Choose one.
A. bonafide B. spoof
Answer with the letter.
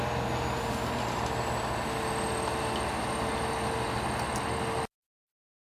A